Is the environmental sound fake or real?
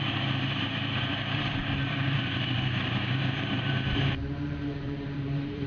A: fake